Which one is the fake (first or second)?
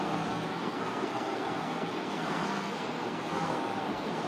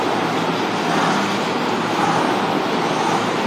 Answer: first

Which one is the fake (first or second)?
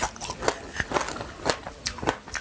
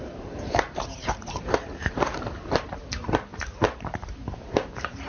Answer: second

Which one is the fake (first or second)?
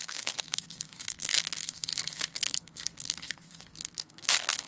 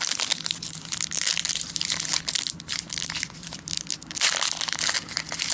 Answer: first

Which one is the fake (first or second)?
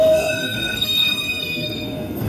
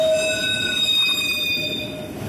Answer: first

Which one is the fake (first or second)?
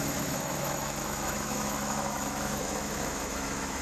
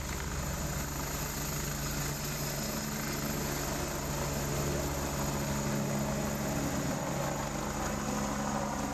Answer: first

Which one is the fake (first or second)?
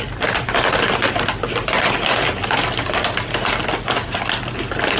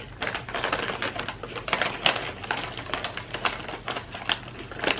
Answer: first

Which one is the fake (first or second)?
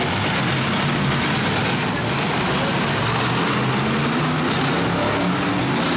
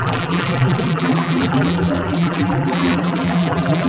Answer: second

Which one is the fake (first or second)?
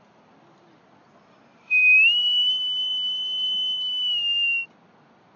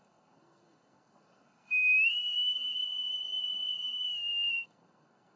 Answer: second